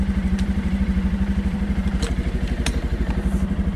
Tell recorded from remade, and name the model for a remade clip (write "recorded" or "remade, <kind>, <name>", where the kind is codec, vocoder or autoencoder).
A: remade, vocoder, BigVGAN v2